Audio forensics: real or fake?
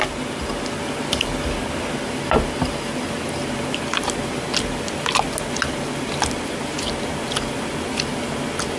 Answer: real